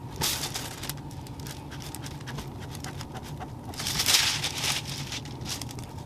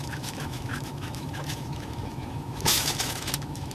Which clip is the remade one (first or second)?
second